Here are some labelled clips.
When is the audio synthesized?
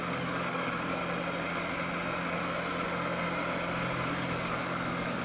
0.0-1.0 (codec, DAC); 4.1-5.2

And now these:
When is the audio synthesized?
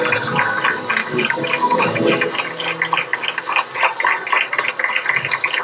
1.0-2.3 (codec, DAC)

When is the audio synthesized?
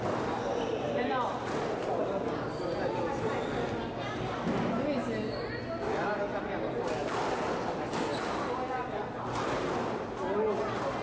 none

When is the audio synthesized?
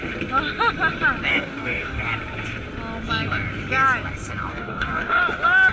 1.3-2.0 (codec, DAC); 4.5-5.2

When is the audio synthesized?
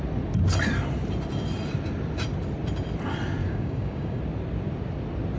3.4-4.2 (codec, DAC)